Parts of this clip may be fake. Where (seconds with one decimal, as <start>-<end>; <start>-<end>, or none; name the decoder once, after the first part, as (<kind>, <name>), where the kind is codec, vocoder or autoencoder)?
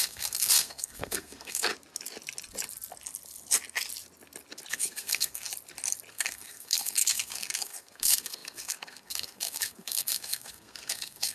0.0-1.7 (codec, SNAC); 4.7-5.5; 6.1-11.3